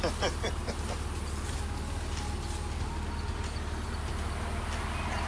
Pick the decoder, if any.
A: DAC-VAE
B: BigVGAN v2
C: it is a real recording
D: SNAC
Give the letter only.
C